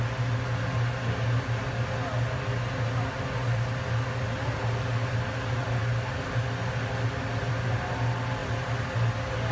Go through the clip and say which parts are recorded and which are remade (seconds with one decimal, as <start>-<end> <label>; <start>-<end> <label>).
0.0-9.5 recorded